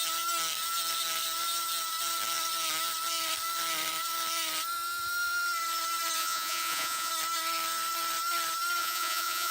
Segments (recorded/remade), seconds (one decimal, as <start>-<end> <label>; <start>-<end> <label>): 0.0-6.2 recorded; 6.2-7.1 remade; 7.1-8.8 recorded; 8.8-9.5 remade